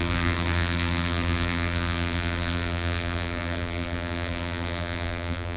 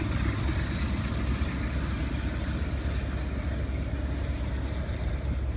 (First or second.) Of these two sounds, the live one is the second